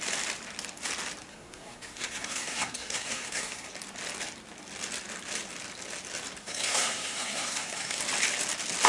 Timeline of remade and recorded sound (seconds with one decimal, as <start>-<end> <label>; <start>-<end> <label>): 0.0-1.3 recorded; 1.3-3.7 remade; 3.7-6.4 recorded; 6.4-8.0 remade; 8.0-8.9 recorded